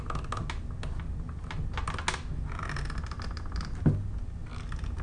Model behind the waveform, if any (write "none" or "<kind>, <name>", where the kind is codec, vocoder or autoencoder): none